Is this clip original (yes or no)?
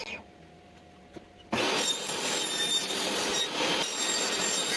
yes